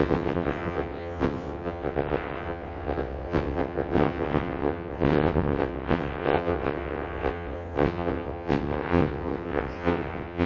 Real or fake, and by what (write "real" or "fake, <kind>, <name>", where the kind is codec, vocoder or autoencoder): fake, vocoder, WaveNeXt